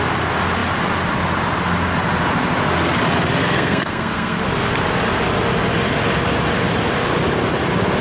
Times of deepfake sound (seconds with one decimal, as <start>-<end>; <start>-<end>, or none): 3.4-4.4